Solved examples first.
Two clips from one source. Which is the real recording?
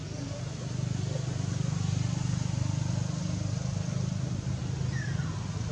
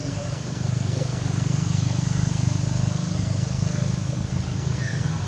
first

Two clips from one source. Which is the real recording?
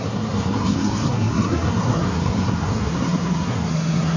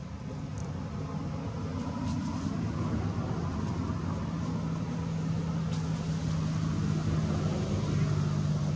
second